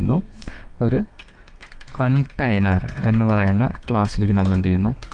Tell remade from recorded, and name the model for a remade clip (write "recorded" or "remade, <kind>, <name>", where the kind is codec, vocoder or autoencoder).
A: remade, codec, SNAC